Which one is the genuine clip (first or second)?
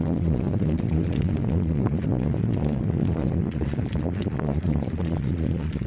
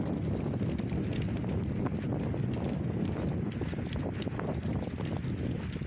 second